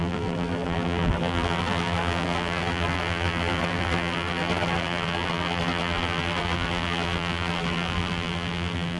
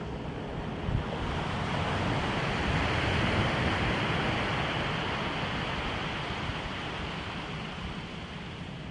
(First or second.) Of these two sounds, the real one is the second